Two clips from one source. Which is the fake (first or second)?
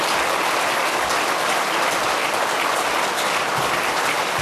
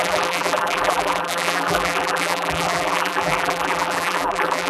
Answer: second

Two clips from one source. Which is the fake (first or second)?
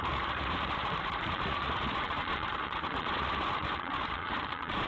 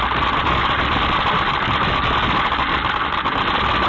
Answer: first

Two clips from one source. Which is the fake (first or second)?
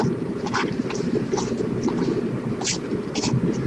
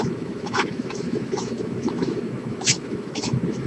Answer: second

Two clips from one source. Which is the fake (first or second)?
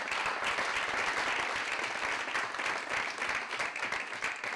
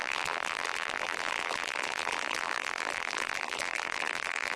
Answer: second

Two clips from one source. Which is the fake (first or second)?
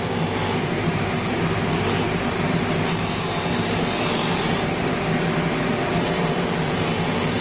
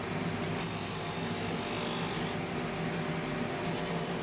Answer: first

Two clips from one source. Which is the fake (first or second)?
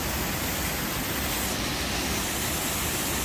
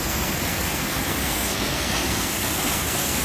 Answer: second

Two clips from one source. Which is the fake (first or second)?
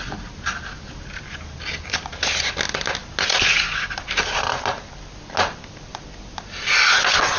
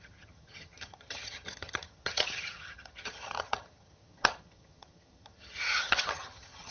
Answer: second